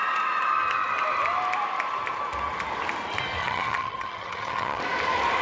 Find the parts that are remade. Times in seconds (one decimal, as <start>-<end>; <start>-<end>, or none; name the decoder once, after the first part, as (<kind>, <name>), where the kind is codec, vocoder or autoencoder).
3.4-4.8 (vocoder, HiFi-GAN)